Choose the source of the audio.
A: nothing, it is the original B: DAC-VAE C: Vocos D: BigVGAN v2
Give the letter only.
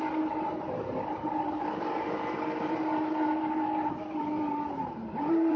D